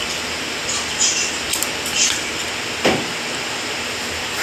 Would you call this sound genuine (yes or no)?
yes